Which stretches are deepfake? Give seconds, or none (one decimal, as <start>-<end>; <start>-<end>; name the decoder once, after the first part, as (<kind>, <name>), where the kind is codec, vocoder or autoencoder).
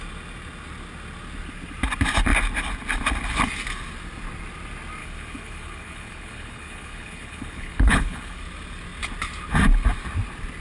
5.0-8.4 (codec, HILCodec)